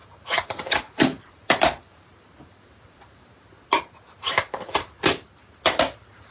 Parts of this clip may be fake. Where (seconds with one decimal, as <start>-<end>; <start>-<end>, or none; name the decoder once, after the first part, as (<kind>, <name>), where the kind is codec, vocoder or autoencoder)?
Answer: 0.0-3.3 (vocoder, BigVGAN v2)